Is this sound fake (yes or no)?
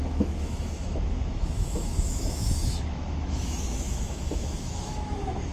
yes